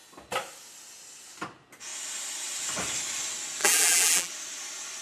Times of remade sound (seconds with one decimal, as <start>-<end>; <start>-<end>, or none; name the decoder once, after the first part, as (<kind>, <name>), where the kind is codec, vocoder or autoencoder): 3.6-4.3 (vocoder, BigVGAN v2)